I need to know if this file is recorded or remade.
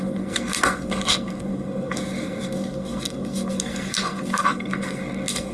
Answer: remade